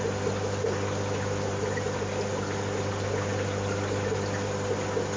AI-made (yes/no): no